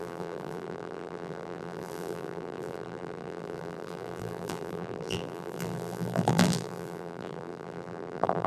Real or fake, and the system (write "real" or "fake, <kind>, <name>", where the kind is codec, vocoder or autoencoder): fake, vocoder, BigVGAN v2